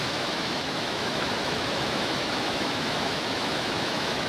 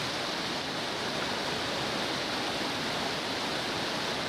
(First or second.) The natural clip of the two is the second